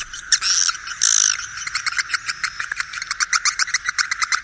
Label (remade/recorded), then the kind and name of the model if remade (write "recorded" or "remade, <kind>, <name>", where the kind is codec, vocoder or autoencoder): recorded